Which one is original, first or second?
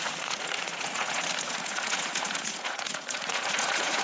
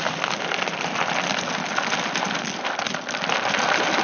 second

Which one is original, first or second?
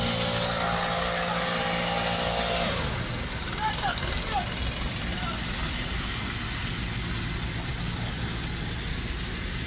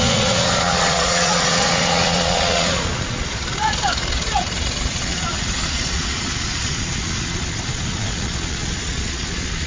first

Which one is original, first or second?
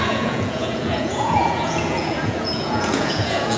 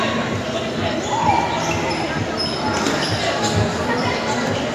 second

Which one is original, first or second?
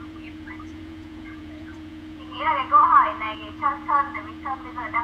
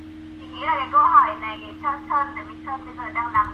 second